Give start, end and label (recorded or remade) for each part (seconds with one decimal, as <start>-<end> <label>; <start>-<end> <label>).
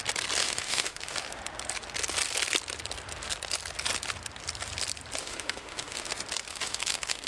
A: 0.0-0.4 recorded; 0.4-1.4 remade; 1.4-5.2 recorded; 5.2-6.1 remade; 6.1-6.5 recorded; 6.5-7.3 remade